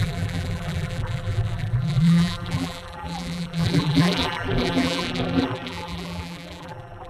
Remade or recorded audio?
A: remade